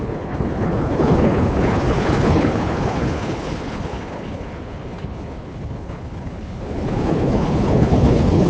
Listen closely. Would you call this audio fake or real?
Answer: fake